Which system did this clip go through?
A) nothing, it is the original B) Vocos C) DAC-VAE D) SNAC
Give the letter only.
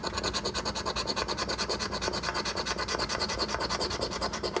A